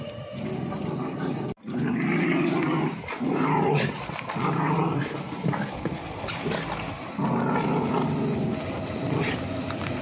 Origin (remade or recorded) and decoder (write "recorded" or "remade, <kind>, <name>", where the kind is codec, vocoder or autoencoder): recorded